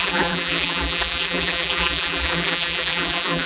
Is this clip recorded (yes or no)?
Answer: no